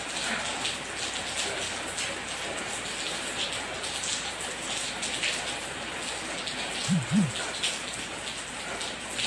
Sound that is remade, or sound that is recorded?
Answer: recorded